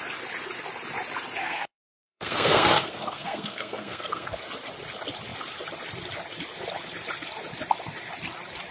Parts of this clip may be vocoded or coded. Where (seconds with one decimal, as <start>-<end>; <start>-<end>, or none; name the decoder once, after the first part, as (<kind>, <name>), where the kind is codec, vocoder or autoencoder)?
1.4-4.4 (codec, SNAC)